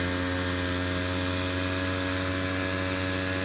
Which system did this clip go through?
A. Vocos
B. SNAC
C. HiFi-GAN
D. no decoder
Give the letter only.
D